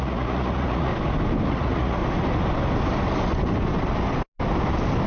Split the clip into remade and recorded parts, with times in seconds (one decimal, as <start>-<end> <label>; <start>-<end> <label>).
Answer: 0.0-0.9 remade; 0.9-1.5 recorded; 1.5-2.0 remade; 2.0-5.1 recorded